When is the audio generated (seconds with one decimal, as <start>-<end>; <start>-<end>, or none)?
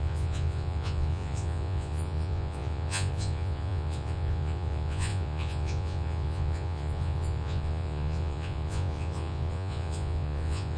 0.0-10.8